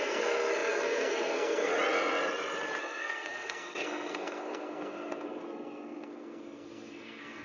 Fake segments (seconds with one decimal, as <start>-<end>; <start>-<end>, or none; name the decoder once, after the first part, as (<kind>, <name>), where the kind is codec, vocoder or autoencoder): 0.0-1.7 (codec, SNAC); 2.8-7.4